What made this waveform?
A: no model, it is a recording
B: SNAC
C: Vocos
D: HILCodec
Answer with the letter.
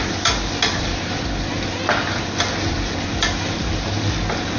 A